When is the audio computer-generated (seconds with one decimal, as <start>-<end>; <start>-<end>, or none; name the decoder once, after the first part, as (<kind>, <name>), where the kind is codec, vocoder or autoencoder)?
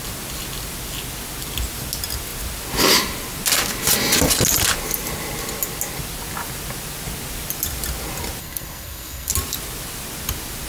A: 8.4-9.3 (codec, SNAC)